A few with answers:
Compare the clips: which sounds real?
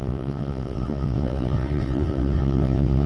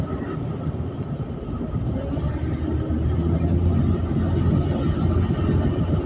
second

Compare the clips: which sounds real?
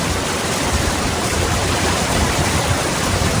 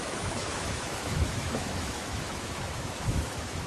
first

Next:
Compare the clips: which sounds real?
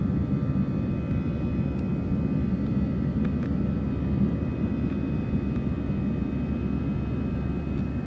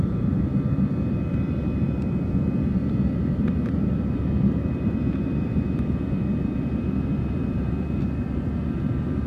first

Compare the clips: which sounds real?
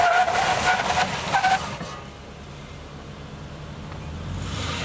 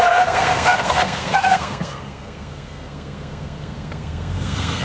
first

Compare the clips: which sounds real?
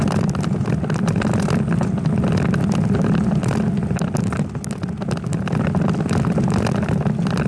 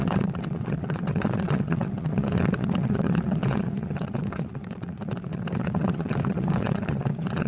first